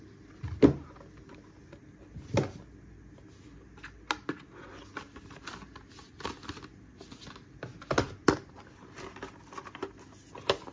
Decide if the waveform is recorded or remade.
recorded